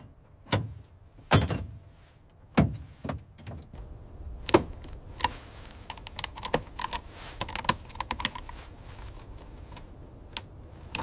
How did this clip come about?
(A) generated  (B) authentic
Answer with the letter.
B